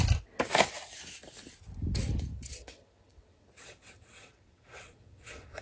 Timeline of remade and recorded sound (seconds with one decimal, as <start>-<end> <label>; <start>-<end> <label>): 0.0-2.3 recorded; 2.3-5.6 remade